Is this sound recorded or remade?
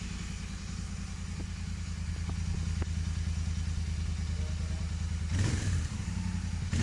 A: recorded